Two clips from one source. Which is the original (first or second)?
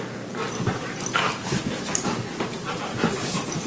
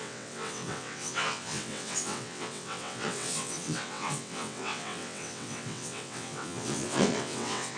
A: first